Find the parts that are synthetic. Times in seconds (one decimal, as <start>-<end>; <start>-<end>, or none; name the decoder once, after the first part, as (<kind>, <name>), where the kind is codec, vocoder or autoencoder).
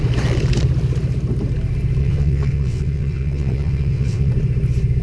2.0-4.3 (vocoder, WaveNeXt)